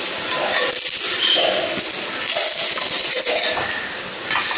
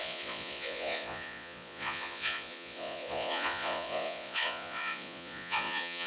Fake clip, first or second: second